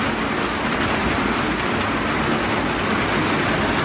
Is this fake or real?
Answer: real